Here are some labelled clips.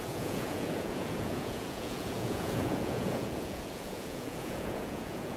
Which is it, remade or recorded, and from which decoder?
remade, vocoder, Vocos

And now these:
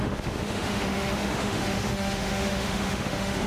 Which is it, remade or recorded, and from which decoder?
remade, autoencoder, DAC-VAE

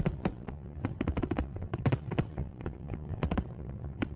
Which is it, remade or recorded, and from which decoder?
remade, vocoder, WaveNeXt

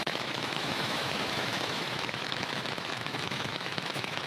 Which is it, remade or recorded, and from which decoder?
remade, autoencoder, DAC-VAE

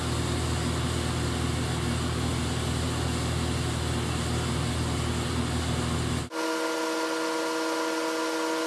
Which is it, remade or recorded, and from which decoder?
recorded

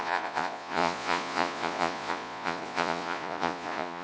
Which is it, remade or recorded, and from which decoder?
remade, vocoder, Vocos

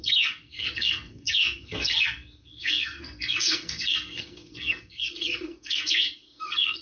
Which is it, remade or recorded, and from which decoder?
remade, codec, SNAC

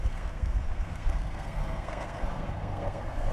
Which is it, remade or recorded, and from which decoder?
remade, codec, SNAC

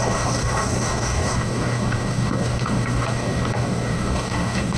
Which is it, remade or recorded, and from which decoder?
remade, codec, DAC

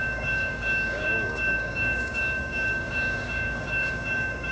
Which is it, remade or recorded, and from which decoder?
remade, codec, DAC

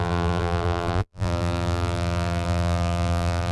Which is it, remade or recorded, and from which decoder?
remade, vocoder, BigVGAN v2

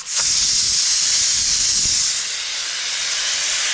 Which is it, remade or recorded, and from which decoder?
recorded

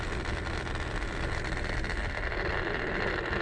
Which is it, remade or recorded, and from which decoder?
recorded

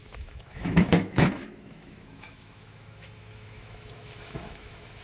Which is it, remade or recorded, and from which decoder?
remade, autoencoder, DAC-VAE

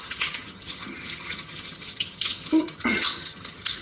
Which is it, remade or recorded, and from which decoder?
remade, vocoder, HiFi-GAN